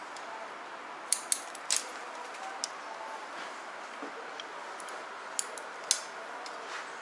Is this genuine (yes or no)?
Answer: yes